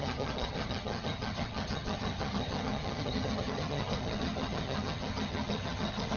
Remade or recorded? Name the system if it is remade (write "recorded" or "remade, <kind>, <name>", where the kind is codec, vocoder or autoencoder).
remade, vocoder, HiFi-GAN